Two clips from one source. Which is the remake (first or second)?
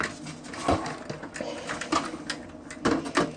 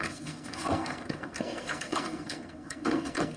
second